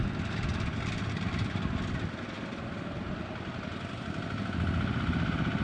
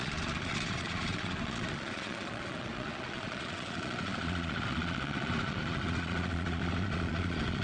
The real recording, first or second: first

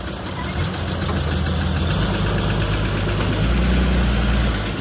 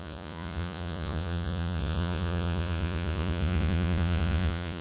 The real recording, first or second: first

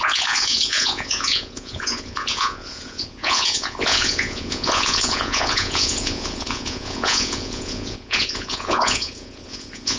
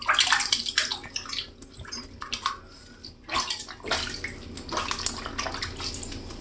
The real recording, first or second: second